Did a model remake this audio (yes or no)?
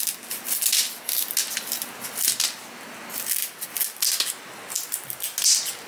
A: no